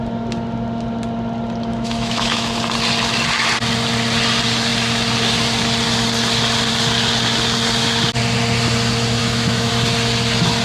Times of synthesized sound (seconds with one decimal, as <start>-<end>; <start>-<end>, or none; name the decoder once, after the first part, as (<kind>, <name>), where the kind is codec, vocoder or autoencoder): 1.7-2.6 (autoencoder, DAC-VAE); 9.2-9.7